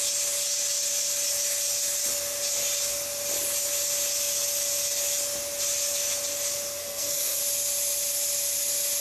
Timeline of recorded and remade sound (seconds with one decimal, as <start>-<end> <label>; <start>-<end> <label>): 0.0-6.8 recorded; 6.8-7.4 remade; 7.4-9.0 recorded